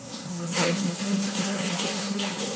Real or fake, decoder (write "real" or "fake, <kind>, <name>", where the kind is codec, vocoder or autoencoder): fake, codec, SNAC